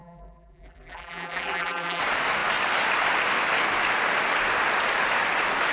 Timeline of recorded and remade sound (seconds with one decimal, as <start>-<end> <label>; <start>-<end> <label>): 0.0-2.0 remade; 2.0-5.7 recorded